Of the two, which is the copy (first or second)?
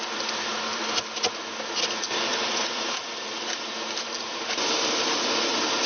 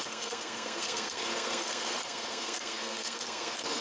second